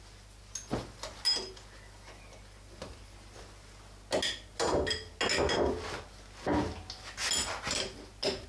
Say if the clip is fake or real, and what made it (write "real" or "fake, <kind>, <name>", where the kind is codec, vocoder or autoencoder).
real